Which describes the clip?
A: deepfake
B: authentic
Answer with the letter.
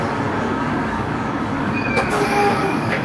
A